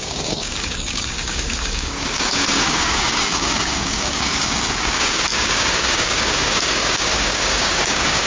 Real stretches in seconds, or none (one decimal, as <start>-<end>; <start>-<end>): none